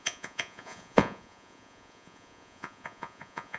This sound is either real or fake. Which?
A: fake